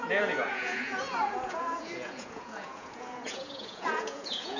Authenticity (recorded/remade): remade